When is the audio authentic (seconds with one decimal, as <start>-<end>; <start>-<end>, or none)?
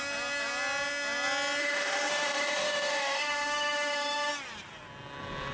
0.0-1.6; 4.3-5.5